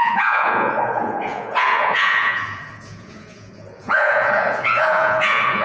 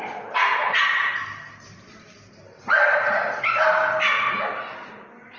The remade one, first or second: first